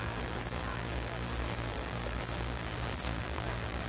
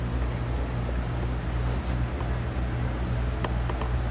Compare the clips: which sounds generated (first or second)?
first